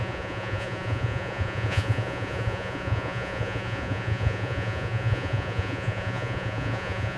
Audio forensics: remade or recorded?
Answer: remade